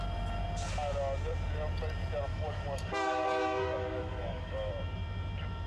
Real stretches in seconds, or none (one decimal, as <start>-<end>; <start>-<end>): 0.0-2.3; 4.7-5.7